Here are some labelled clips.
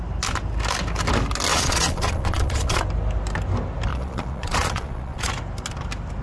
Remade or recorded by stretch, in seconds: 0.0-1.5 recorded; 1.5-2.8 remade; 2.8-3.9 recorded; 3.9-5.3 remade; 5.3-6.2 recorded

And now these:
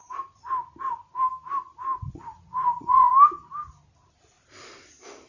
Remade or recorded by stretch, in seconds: 0.0-2.3 recorded; 2.3-3.1 remade; 3.1-5.3 recorded

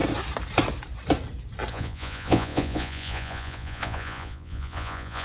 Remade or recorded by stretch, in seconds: 0.0-1.7 recorded; 1.7-5.2 remade

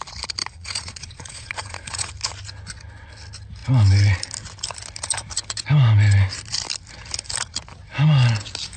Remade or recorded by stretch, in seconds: 0.0-0.4 recorded; 0.4-2.1 remade; 2.1-8.8 recorded

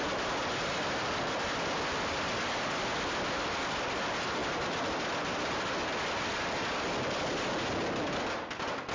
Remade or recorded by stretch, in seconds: 0.0-8.9 recorded